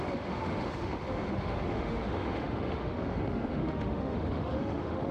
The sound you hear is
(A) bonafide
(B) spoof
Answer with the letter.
B